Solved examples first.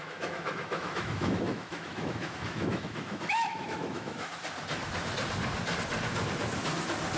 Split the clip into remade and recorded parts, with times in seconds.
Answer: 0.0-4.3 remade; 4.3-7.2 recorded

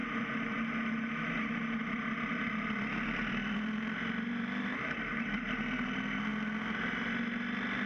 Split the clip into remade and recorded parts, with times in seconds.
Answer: 0.0-1.8 recorded; 1.8-6.3 remade; 6.3-7.9 recorded

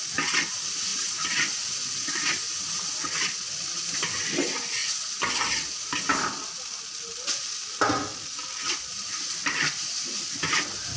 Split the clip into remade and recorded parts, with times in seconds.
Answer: 0.0-11.0 recorded